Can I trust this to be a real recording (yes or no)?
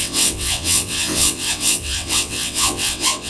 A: no